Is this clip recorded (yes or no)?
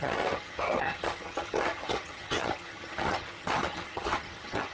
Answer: no